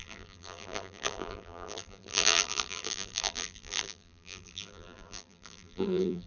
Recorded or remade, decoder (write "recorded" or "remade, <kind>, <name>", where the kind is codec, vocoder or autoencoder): remade, vocoder, BigVGAN v2